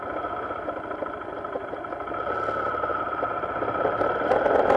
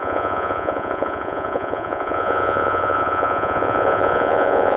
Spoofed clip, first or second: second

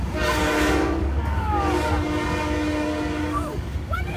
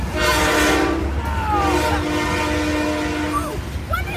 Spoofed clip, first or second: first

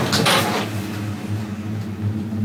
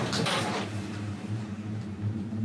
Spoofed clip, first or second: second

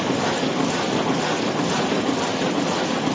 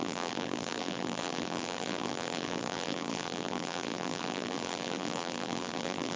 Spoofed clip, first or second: second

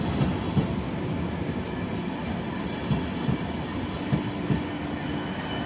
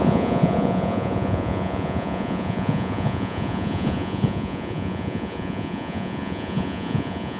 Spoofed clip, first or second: second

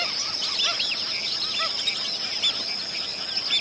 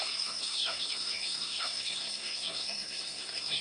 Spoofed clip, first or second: second